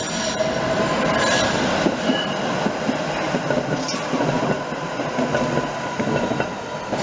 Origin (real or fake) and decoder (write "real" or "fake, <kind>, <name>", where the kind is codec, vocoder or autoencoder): real